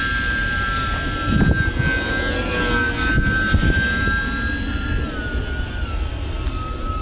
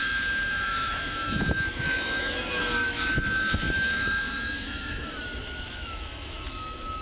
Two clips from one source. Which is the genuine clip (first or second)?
first